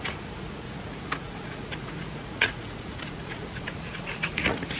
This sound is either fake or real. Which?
fake